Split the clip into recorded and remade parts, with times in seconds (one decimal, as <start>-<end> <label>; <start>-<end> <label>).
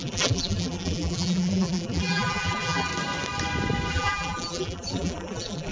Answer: 0.0-2.9 remade; 2.9-3.9 recorded; 3.9-5.7 remade